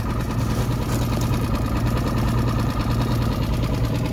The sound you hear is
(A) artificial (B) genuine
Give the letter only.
B